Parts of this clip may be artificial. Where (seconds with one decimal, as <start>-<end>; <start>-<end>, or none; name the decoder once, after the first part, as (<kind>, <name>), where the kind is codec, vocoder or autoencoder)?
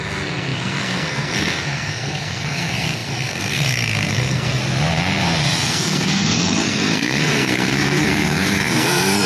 0.0-4.6 (codec, SNAC); 5.7-9.3